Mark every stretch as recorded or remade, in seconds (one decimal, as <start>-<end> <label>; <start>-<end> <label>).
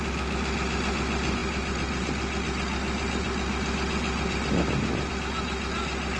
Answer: 0.0-6.2 recorded